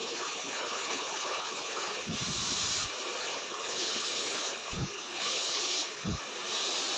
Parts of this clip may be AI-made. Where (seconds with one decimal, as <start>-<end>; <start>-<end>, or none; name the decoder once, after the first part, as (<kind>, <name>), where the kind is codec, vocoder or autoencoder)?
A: 0.0-2.2 (codec, HILCodec); 3.2-6.2